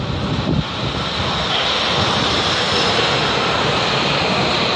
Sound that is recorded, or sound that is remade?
recorded